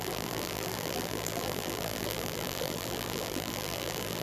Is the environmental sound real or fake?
fake